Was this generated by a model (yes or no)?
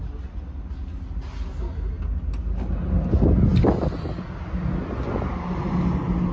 no